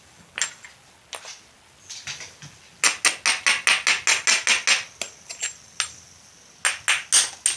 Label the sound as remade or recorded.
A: recorded